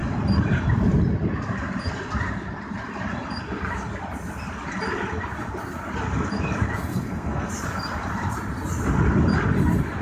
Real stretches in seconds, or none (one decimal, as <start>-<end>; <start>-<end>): 0.0-6.9; 7.5-10.0